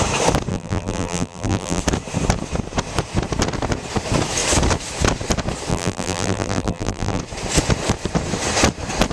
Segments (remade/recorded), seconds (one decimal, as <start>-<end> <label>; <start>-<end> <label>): 0.0-0.5 recorded; 0.5-1.8 remade; 1.8-5.7 recorded; 5.7-7.2 remade; 7.2-9.1 recorded